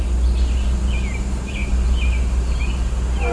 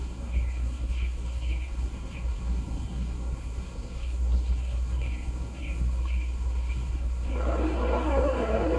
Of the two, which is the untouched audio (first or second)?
first